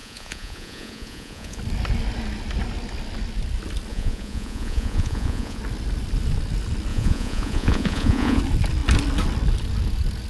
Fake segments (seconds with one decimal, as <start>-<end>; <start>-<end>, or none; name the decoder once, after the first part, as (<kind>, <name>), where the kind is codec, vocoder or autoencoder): 0.0-1.6 (vocoder, Vocos); 3.9-5.6; 6.9-8.4